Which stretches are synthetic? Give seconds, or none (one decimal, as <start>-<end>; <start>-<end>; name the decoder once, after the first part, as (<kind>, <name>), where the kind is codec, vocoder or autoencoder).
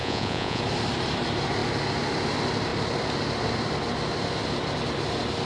0.0-0.6 (vocoder, Vocos)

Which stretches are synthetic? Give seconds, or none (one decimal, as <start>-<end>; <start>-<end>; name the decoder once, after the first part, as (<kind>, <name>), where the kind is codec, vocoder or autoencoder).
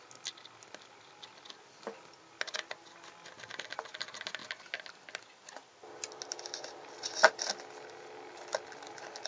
none